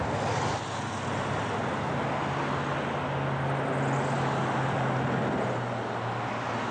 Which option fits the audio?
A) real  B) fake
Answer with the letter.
A